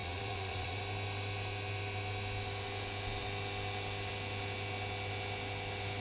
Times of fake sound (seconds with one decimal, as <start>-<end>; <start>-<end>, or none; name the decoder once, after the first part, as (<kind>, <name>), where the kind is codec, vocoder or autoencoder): 0.0-0.8 (vocoder, Vocos)